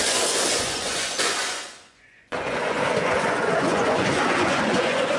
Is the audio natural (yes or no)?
no